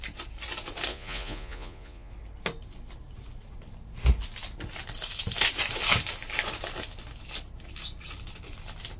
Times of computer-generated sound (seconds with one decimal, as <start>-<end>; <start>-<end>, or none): 0.9-2.1